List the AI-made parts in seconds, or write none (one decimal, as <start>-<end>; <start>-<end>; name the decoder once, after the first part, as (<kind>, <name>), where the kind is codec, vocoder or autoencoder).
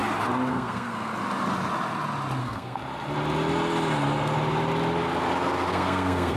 0.5-1.1 (codec, SNAC); 2.4-2.8; 5.7-6.4